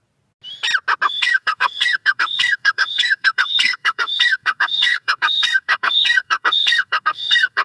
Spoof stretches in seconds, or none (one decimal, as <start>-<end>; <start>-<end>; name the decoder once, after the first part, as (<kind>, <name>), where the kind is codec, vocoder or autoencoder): 1.1-7.6 (codec, SNAC)